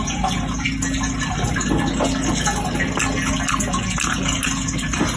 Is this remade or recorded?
recorded